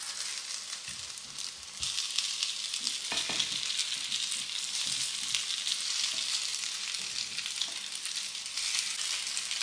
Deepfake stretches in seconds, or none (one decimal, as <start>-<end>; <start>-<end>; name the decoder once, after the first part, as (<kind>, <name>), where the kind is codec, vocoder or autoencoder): none